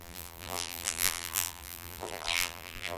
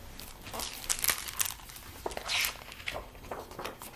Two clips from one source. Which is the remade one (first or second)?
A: first